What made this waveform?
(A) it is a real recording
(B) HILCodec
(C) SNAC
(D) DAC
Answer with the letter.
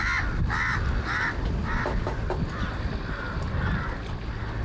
A